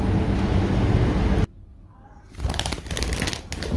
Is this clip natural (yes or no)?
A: yes